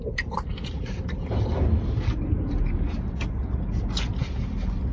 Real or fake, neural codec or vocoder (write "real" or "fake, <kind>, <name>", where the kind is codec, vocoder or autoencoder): real